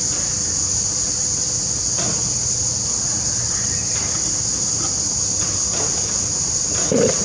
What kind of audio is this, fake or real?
real